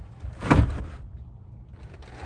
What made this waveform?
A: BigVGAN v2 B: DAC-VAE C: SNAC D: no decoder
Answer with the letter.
D